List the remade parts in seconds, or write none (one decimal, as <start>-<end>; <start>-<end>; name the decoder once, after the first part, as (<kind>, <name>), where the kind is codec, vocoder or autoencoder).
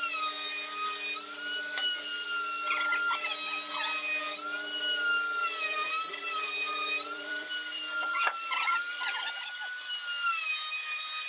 5.4-9.8 (vocoder, BigVGAN v2)